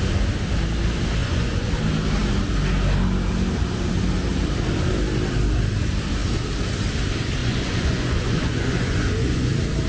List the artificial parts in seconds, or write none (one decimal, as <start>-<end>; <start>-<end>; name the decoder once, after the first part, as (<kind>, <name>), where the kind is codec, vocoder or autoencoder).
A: 1.2-1.7 (vocoder, Vocos); 7.4-9.5